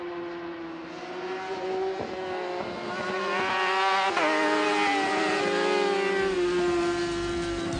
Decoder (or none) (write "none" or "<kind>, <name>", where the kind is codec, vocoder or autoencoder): none